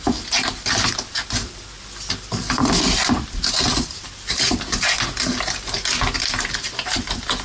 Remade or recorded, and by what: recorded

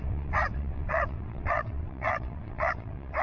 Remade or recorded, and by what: remade, vocoder, WaveNeXt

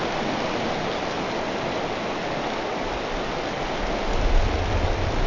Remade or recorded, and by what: recorded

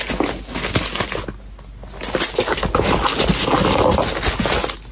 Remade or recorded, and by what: recorded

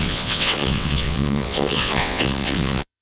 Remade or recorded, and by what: remade, vocoder, WaveNeXt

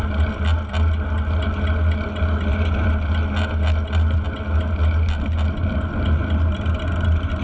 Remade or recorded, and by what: recorded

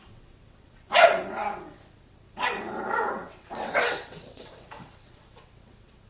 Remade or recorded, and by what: remade, vocoder, WaveNeXt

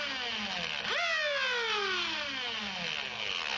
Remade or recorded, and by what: recorded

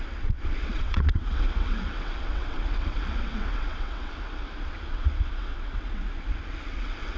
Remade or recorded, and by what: remade, vocoder, WaveNeXt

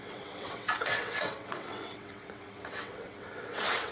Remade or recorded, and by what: remade, vocoder, WaveNeXt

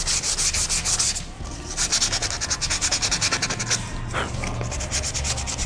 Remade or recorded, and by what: recorded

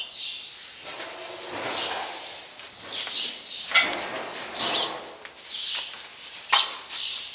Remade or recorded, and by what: recorded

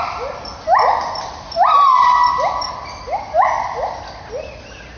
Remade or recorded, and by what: recorded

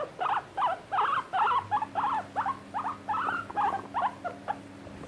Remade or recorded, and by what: recorded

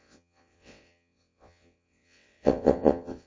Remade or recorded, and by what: remade, vocoder, WaveNeXt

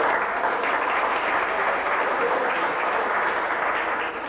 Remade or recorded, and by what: recorded